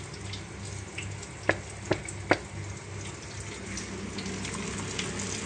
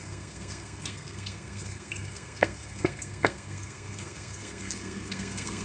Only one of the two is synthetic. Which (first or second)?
second